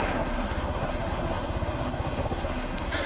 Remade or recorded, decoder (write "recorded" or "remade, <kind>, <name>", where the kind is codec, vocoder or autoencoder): remade, codec, SNAC